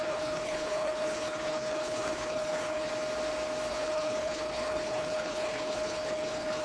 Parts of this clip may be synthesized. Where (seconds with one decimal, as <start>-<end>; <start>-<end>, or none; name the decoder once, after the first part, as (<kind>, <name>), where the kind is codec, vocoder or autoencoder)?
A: 0.0-2.9 (codec, HILCodec); 3.7-6.6